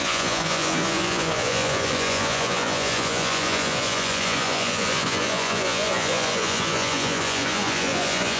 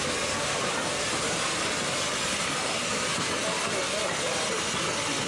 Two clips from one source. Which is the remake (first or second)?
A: first